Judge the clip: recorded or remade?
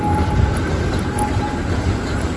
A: recorded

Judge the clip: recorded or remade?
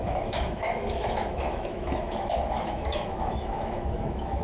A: remade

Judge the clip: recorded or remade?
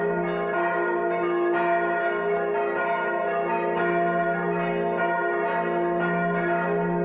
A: recorded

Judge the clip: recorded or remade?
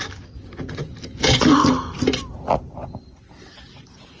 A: recorded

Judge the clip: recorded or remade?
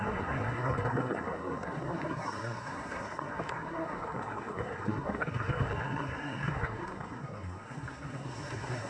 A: remade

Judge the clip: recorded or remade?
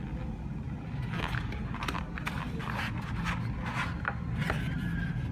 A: recorded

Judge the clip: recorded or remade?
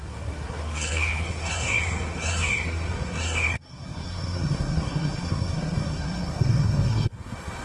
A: remade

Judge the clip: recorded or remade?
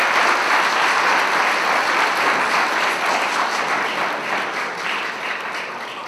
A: recorded